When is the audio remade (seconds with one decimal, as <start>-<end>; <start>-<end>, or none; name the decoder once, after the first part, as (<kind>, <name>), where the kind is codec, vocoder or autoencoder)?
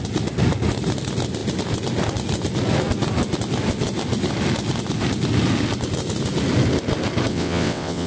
7.3-8.1 (vocoder, WaveNeXt)